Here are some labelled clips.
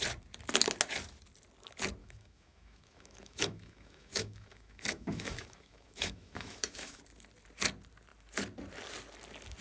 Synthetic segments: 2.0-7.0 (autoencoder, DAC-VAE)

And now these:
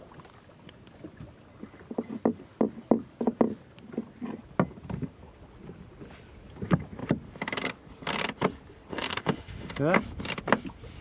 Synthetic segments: 8.9-9.7 (autoencoder, DAC-VAE)

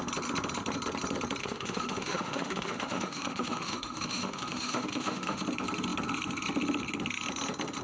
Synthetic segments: 1.4-5.4 (autoencoder, DAC-VAE)

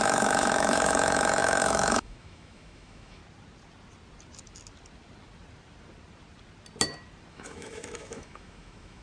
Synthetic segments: 0.0-3.2 (autoencoder, DAC-VAE); 7.3-9.0